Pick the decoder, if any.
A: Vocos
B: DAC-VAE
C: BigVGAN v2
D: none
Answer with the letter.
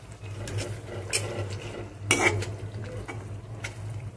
D